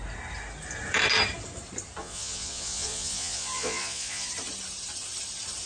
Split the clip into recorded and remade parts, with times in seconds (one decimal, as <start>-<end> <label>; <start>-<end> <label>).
0.0-2.0 recorded; 2.0-4.3 remade; 4.3-5.7 recorded